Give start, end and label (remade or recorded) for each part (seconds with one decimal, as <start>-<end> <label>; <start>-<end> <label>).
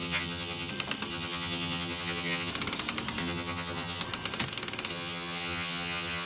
0.0-0.7 remade; 0.7-1.1 recorded; 1.1-2.5 remade; 2.5-3.2 recorded; 3.2-4.0 remade; 4.0-4.9 recorded; 4.9-6.3 remade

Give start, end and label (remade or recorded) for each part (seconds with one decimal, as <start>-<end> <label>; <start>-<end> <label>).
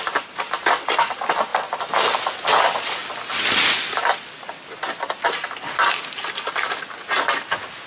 0.0-7.9 recorded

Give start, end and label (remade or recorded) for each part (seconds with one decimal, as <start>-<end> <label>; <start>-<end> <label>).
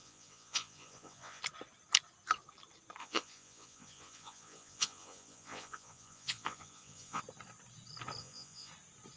0.0-1.4 remade; 1.4-3.0 recorded; 3.0-7.2 remade; 7.2-8.2 recorded; 8.2-8.7 remade; 8.7-9.2 recorded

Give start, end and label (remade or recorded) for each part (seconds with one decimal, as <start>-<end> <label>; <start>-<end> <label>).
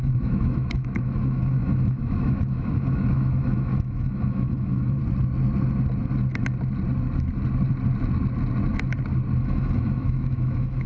0.0-5.0 remade; 5.0-9.4 recorded; 9.4-10.9 remade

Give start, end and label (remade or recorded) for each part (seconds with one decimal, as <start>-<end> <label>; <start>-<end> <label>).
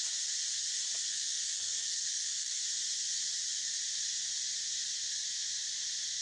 0.0-1.1 recorded; 1.1-2.6 remade; 2.6-6.2 recorded